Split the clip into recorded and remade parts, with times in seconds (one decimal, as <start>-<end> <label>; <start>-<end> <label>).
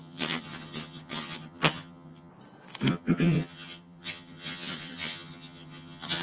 0.0-2.3 remade; 2.3-2.9 recorded; 2.9-6.2 remade